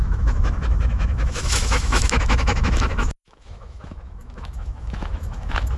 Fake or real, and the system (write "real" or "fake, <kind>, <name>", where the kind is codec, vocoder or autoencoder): fake, autoencoder, DAC-VAE